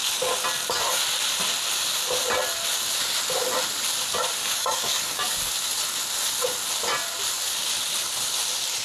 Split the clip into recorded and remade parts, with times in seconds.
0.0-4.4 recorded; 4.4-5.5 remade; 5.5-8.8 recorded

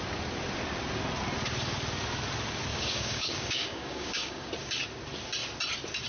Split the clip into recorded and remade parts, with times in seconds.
0.0-2.7 recorded; 2.7-4.5 remade; 4.5-6.1 recorded

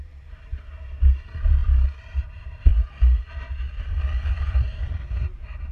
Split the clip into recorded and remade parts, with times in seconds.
0.0-1.6 remade; 1.6-2.2 recorded; 2.2-2.7 remade; 2.7-5.1 recorded; 5.1-5.7 remade

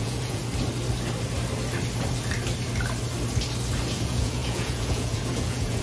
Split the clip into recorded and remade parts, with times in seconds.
0.0-0.4 remade; 0.4-3.9 recorded; 3.9-5.8 remade

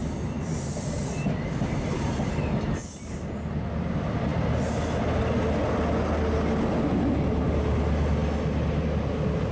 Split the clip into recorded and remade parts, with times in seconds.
0.0-9.5 recorded

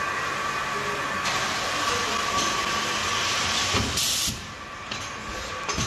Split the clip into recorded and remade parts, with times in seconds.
0.0-5.9 recorded

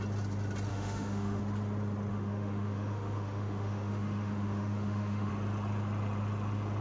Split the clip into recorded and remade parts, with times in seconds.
0.0-0.7 recorded; 0.7-1.4 remade; 1.4-2.1 recorded; 2.1-5.3 remade; 5.3-6.8 recorded

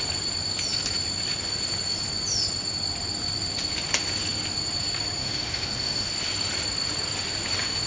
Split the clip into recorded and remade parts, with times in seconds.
0.0-5.2 recorded; 5.2-6.1 remade; 6.1-7.9 recorded